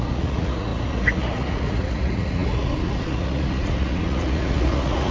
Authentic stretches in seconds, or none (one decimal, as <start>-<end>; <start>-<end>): none